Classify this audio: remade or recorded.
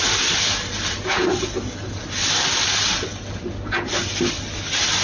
recorded